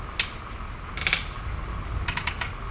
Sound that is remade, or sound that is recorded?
recorded